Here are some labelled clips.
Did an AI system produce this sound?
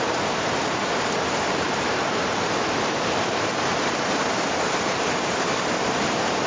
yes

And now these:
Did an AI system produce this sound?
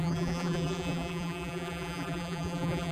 yes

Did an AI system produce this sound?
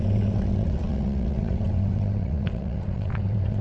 yes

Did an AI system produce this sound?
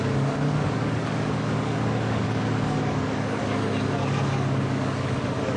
yes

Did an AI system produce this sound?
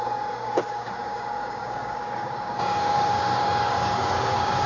yes